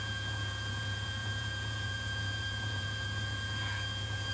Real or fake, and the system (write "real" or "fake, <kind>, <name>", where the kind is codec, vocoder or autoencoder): fake, vocoder, Vocos